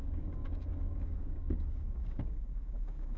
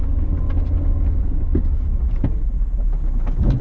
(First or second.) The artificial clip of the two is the first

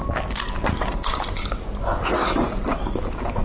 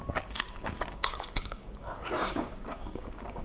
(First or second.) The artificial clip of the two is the second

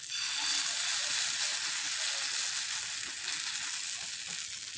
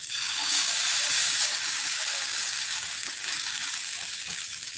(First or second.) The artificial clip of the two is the second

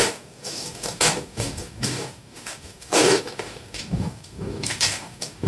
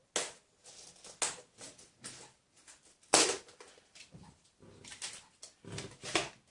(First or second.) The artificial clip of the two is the first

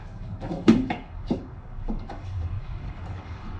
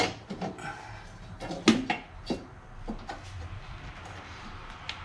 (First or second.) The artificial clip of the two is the first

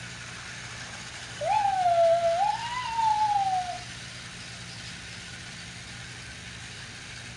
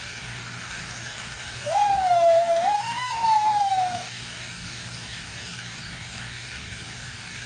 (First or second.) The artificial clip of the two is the second